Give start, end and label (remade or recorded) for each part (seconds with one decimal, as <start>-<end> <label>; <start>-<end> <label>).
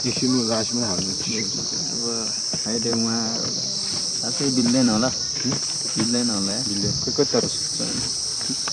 0.0-8.7 remade